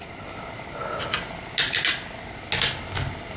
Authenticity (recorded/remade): recorded